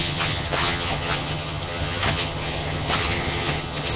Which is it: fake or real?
fake